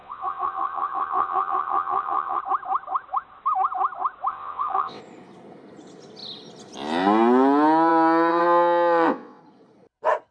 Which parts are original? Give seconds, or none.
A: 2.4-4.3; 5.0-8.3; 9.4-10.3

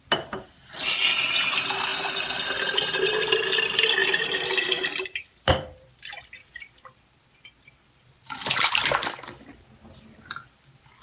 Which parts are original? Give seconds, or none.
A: 0.0-4.0; 6.0-8.2; 9.2-11.0